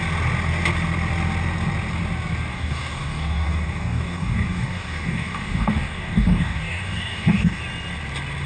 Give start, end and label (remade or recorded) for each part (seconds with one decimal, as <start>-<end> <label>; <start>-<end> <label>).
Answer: 0.0-2.5 recorded; 2.5-7.6 remade; 7.6-8.5 recorded